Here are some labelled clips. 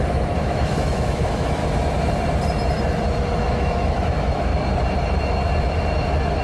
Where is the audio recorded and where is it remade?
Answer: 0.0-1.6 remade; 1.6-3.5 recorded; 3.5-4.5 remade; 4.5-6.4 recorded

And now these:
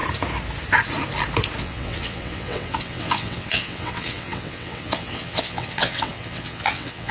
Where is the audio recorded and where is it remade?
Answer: 0.0-1.6 recorded; 1.6-7.1 remade

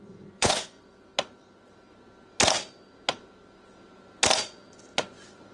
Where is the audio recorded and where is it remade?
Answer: 0.0-1.1 remade; 1.1-4.4 recorded; 4.4-5.5 remade

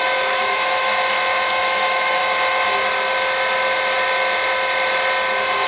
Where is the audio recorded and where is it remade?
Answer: 0.0-0.9 remade; 0.9-1.5 recorded; 1.5-2.2 remade; 2.2-5.7 recorded

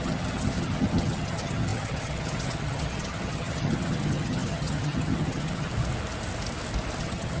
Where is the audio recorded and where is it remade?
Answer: 0.0-5.7 remade; 5.7-7.0 recorded; 7.0-7.4 remade